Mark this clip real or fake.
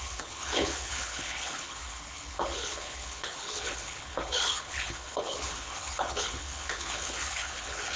fake